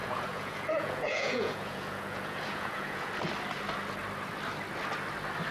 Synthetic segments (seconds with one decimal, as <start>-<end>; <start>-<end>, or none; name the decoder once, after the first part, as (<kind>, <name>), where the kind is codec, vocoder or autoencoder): 0.0-3.1 (vocoder, Vocos)